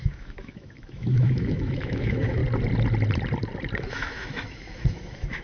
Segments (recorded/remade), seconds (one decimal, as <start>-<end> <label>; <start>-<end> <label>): 0.0-2.4 remade; 2.4-3.9 recorded; 3.9-5.4 remade